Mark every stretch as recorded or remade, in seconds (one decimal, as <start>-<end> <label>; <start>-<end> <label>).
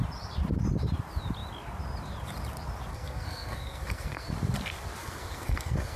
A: 0.0-2.9 recorded; 2.9-4.3 remade; 4.3-5.0 recorded; 5.0-6.0 remade